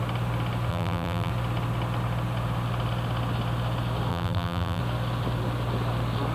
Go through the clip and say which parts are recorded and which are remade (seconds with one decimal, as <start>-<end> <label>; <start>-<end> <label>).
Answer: 0.0-0.7 recorded; 0.7-1.3 remade; 1.3-4.1 recorded; 4.1-4.8 remade; 4.8-6.3 recorded